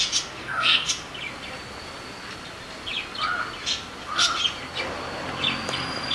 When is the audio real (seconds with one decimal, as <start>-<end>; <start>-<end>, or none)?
0.0-0.4; 0.9-6.1